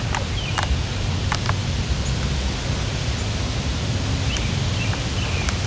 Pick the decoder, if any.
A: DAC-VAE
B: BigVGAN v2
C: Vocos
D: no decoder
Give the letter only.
D